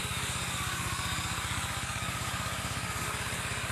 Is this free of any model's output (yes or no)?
no